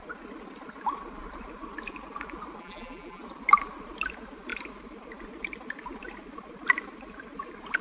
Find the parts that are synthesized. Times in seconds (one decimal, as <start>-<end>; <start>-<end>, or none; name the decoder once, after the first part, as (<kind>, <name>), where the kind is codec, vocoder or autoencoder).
2.6-3.2 (vocoder, BigVGAN v2)